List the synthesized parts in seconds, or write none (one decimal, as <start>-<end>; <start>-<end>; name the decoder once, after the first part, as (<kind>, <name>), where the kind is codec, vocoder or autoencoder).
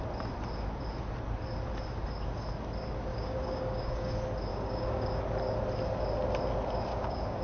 3.1-4.1 (codec, DAC); 4.5-5.2; 6.9-7.4